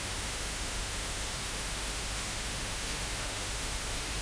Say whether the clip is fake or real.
fake